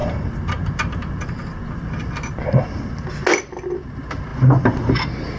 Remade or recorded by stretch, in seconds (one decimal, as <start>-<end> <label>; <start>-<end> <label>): 0.0-5.4 recorded

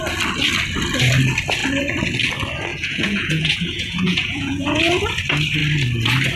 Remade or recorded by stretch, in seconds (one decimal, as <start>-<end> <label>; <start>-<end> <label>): 0.0-2.7 recorded; 2.7-4.8 remade; 4.8-6.4 recorded

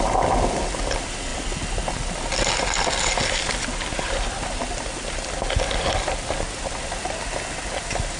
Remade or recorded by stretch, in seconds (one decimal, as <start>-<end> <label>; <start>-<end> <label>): 0.0-8.2 recorded

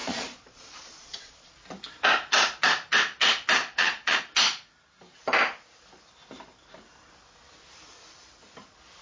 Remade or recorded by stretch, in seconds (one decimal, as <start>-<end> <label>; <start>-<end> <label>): 0.0-1.5 remade; 1.5-3.6 recorded; 3.6-4.2 remade; 4.2-9.0 recorded

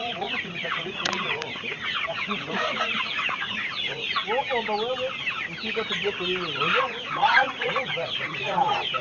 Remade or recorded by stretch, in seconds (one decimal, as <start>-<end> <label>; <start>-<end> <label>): 0.0-4.2 remade; 4.2-6.8 recorded; 6.8-9.0 remade

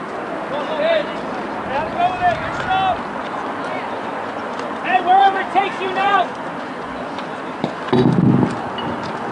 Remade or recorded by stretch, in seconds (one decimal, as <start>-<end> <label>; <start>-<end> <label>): 0.0-3.2 recorded; 3.2-7.9 remade; 7.9-9.3 recorded

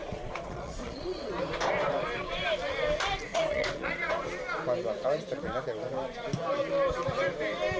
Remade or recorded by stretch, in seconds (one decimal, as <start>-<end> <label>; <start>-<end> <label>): 0.0-1.3 remade; 1.3-3.3 recorded; 3.3-4.1 remade; 4.1-7.8 recorded